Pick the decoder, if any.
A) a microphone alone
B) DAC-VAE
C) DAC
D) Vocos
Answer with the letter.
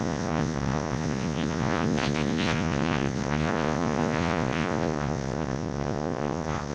D